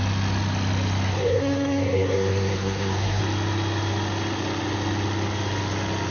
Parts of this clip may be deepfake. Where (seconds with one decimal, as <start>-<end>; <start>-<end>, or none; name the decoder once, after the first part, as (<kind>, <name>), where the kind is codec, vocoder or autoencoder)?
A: 1.1-3.2 (codec, SNAC)